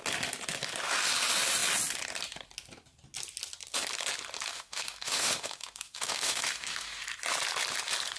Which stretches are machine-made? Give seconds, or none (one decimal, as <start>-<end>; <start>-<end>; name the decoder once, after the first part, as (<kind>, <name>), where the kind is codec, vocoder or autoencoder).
4.5-7.0 (autoencoder, DAC-VAE)